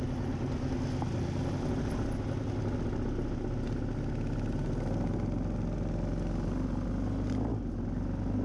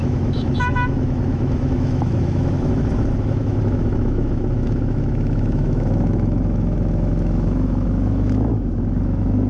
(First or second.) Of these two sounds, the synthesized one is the second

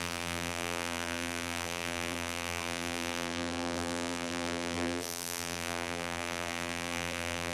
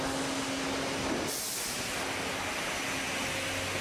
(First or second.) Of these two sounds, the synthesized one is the first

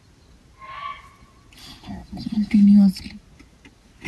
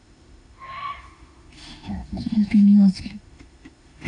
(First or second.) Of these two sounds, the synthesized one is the second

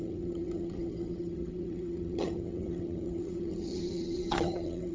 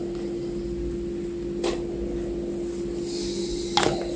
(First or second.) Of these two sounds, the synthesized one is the first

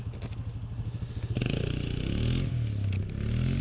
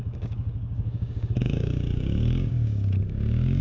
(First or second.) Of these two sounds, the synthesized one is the second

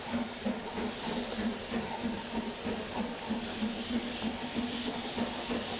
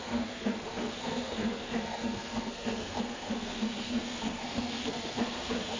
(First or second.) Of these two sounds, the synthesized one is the second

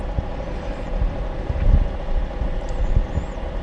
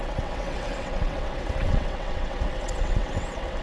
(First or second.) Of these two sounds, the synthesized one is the second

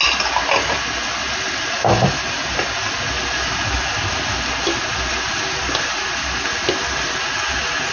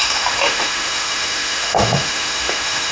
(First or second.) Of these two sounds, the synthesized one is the second